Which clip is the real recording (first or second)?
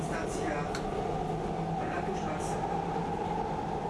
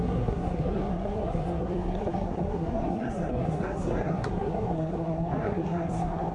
first